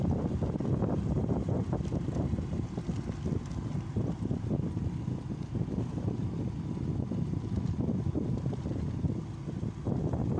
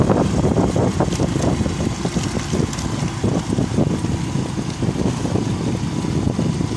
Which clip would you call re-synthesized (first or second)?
first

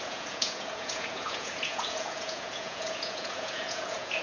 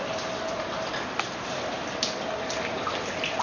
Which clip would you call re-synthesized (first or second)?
first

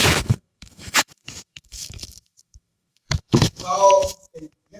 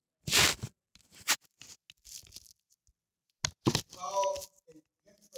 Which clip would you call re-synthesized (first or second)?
first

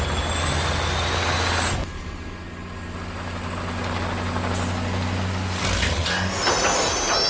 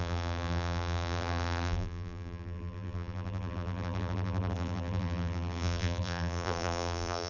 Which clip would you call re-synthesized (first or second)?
second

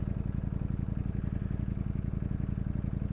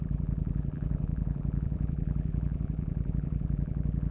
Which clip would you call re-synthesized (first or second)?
second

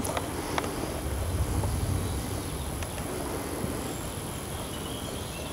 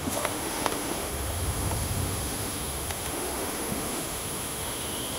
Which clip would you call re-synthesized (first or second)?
second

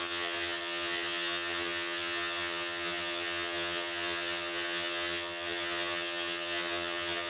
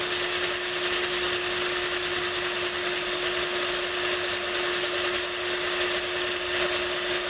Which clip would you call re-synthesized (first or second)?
first